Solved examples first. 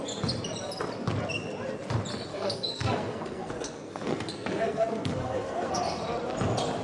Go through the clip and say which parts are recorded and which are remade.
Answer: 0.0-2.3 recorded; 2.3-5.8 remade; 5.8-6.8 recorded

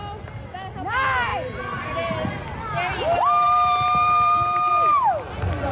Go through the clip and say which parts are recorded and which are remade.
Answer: 0.0-5.7 recorded

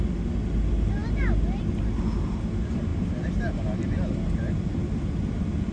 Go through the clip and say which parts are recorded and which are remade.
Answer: 0.0-5.7 recorded